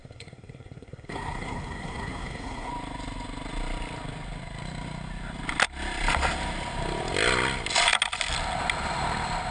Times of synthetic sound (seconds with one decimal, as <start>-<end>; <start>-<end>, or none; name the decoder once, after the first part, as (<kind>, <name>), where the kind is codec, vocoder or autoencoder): 0.0-2.7 (codec, SNAC)